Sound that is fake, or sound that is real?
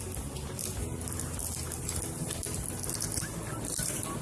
real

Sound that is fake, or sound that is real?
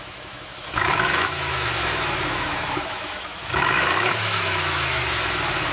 fake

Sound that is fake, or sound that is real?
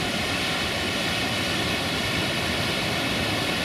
real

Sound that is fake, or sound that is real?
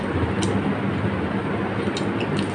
real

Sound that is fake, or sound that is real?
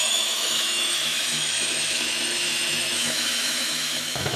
fake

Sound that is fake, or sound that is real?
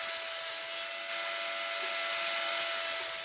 real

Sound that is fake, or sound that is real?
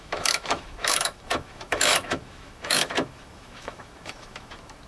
fake